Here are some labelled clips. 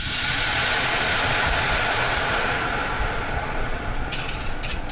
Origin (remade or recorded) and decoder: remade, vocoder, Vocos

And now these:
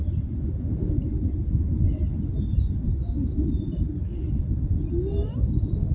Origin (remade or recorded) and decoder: recorded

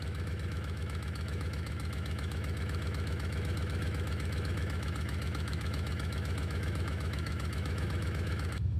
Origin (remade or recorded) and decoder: remade, autoencoder, DAC-VAE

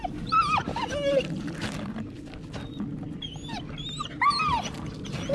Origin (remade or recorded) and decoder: recorded